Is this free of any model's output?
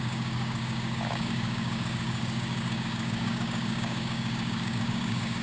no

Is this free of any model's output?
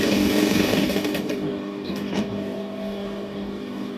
no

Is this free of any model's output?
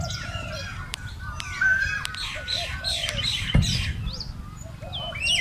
yes